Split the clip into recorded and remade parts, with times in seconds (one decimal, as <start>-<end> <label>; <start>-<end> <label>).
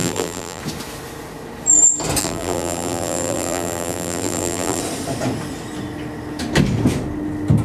0.0-0.6 remade; 0.6-2.2 recorded; 2.2-4.8 remade; 4.8-7.6 recorded